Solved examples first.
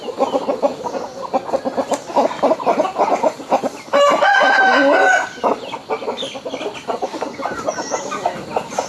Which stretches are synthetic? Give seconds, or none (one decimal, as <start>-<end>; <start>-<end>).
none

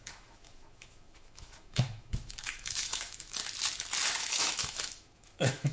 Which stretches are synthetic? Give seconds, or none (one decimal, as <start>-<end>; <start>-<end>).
0.0-3.4; 4.2-5.7

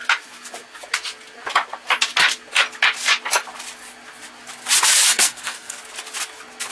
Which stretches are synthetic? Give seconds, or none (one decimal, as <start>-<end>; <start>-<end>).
5.1-5.8